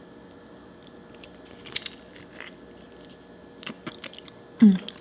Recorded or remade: recorded